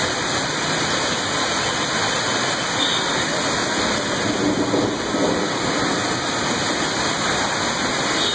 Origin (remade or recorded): recorded